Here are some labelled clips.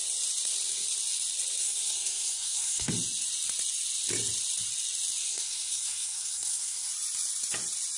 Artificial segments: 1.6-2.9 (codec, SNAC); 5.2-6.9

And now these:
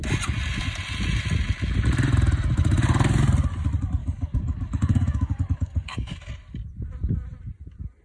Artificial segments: 4.0-6.3 (codec, DAC)

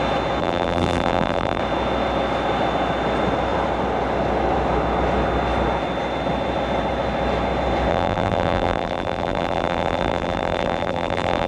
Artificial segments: 0.4-1.6 (vocoder, BigVGAN v2); 7.9-11.5